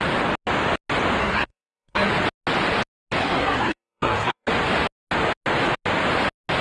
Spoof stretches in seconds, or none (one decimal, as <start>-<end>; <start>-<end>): 1.2-2.1; 3.2-4.5